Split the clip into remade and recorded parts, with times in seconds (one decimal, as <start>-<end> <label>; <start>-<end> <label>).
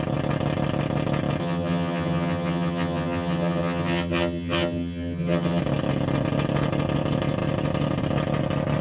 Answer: 0.0-1.4 recorded; 1.4-5.6 remade; 5.6-8.8 recorded